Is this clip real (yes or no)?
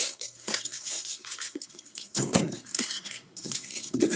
no